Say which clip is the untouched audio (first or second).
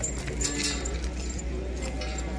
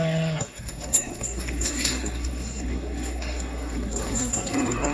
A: first